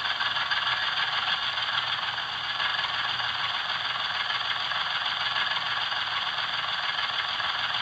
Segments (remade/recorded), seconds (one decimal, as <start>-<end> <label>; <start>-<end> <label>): 0.0-7.8 recorded